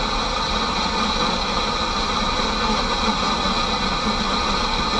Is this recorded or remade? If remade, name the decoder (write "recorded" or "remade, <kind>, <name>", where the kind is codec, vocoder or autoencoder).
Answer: recorded